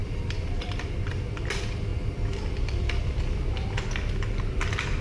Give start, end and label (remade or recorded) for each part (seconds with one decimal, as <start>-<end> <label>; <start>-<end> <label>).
0.0-1.0 remade; 1.0-5.0 recorded